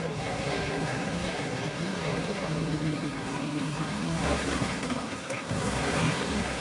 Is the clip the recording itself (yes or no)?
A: no